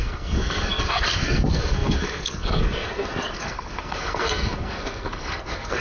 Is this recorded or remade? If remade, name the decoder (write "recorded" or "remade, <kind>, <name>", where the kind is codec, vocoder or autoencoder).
remade, codec, SNAC